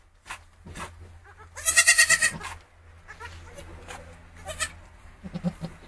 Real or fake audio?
real